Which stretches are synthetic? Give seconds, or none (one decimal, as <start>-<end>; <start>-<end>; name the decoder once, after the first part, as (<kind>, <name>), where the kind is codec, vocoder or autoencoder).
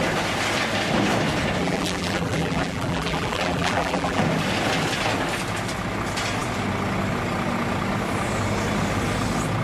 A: 1.6-4.2 (vocoder, BigVGAN v2)